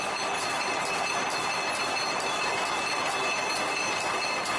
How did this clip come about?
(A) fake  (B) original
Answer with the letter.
B